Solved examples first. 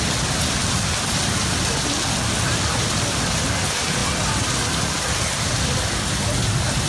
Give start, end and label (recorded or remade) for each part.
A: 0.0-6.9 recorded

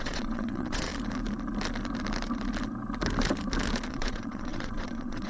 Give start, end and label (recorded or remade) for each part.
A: 0.0-0.9 remade; 0.9-3.9 recorded; 3.9-5.3 remade

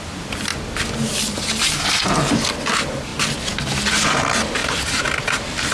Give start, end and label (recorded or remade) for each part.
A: 0.0-0.5 remade; 0.5-2.6 recorded; 2.6-3.1 remade; 3.1-3.9 recorded; 3.9-4.6 remade; 4.6-5.2 recorded; 5.2-5.7 remade

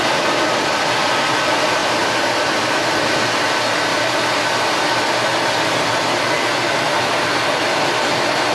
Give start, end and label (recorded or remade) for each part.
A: 0.0-1.8 recorded; 1.8-2.6 remade; 2.6-3.9 recorded; 3.9-4.4 remade; 4.4-8.5 recorded

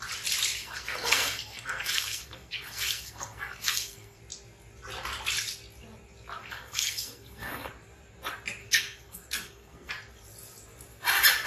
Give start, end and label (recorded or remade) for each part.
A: 0.0-0.6 recorded; 0.6-4.2 remade; 4.2-6.4 recorded; 6.4-7.7 remade; 7.7-8.6 recorded; 8.6-9.9 remade; 9.9-11.5 recorded

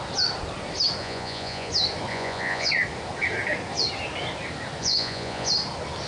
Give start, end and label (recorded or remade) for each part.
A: 0.0-1.0 recorded; 1.0-1.7 remade; 1.7-2.1 recorded; 2.1-2.7 remade; 2.7-4.8 recorded; 4.8-5.5 remade; 5.5-6.1 recorded

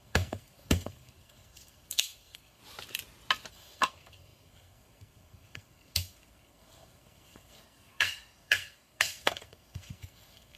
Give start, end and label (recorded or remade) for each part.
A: 0.0-2.6 remade; 2.6-3.5 recorded; 3.5-10.6 remade

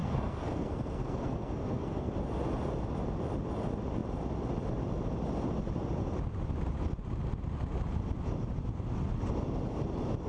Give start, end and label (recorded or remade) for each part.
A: 0.0-2.1 remade; 2.1-10.3 recorded